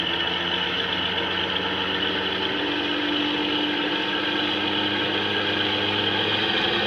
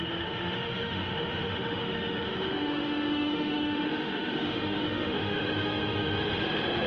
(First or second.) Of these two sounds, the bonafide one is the first